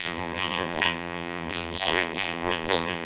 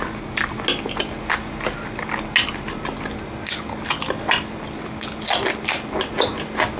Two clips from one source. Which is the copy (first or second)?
first